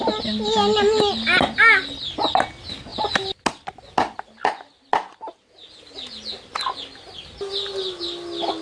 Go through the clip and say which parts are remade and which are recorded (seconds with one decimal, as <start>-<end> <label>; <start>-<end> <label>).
0.0-2.9 recorded; 2.9-3.4 remade; 3.4-8.6 recorded